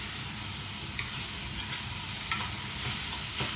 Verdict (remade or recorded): recorded